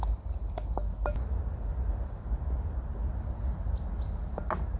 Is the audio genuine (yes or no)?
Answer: yes